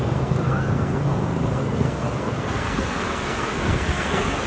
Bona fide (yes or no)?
no